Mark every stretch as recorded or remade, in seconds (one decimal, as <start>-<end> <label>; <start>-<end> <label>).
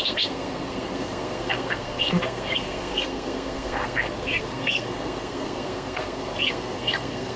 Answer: 0.0-7.4 remade